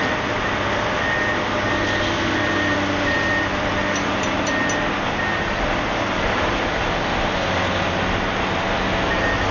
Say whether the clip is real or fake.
real